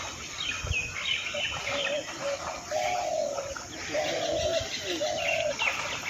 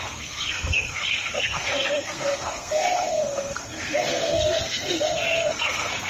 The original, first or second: first